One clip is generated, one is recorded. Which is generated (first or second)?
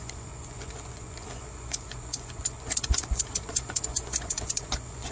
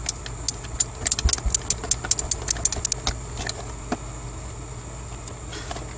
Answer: first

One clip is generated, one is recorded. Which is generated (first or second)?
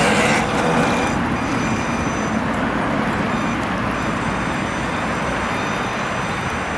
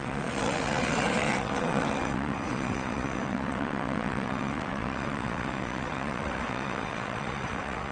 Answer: second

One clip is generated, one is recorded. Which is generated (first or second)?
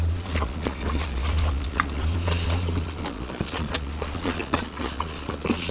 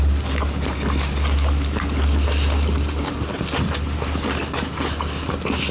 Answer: first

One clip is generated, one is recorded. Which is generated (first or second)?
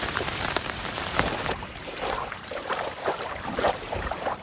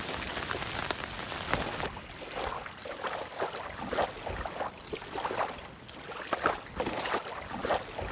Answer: first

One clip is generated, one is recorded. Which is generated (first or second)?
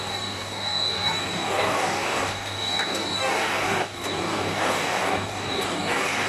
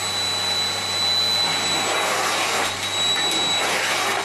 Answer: first